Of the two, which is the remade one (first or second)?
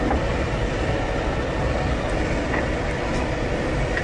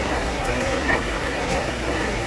second